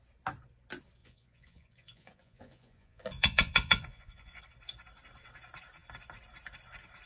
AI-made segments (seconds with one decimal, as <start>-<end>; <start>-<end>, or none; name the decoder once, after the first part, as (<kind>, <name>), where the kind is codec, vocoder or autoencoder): 1.0-4.4 (vocoder, Vocos)